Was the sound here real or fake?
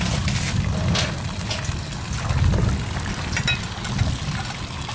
real